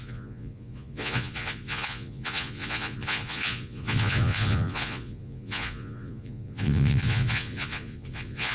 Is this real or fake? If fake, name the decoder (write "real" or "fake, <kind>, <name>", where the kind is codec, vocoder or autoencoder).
fake, vocoder, Vocos